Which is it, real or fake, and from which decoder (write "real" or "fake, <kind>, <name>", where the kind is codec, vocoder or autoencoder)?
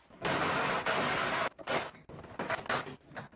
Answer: real